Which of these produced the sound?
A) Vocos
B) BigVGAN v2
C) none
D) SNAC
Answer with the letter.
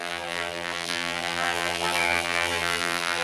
B